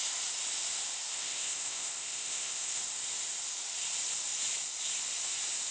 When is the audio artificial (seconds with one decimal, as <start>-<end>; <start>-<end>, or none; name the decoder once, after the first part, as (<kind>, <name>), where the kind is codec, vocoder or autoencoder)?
1.1-2.8 (codec, ZipCodec)